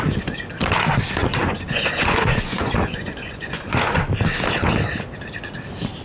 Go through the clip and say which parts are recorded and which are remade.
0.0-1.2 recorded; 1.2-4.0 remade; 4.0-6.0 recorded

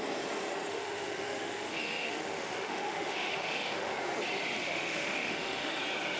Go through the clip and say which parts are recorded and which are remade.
0.0-0.7 recorded; 0.7-4.0 remade; 4.0-4.6 recorded; 4.6-5.8 remade; 5.8-6.2 recorded

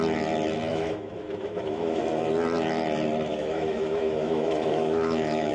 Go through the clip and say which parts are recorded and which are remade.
0.0-0.7 recorded; 0.7-2.0 remade; 2.0-3.3 recorded; 3.3-5.5 remade

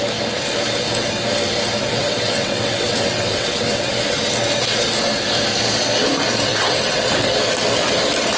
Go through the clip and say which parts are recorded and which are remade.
0.0-1.8 recorded; 1.8-3.9 remade; 3.9-6.5 recorded; 6.5-7.1 remade; 7.1-8.4 recorded

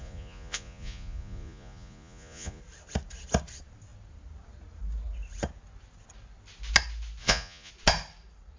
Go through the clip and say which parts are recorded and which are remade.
0.0-2.6 remade; 2.6-7.2 recorded; 7.2-7.7 remade; 7.7-8.6 recorded

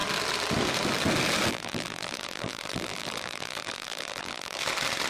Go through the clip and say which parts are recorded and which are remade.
0.0-1.5 recorded; 1.5-4.6 remade; 4.6-5.1 recorded

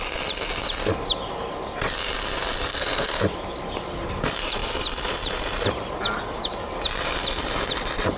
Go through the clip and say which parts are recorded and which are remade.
0.0-2.7 recorded; 2.7-3.2 remade; 3.2-8.2 recorded

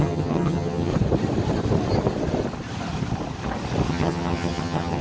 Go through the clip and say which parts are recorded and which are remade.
0.0-0.9 remade; 0.9-3.9 recorded; 3.9-5.0 remade